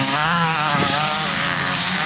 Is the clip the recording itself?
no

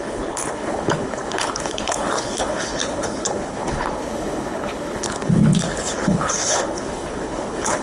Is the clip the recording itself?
no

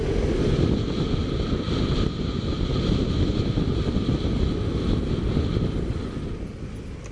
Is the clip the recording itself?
yes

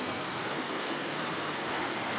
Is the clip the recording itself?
no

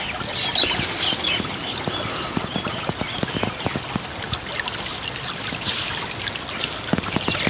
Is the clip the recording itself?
yes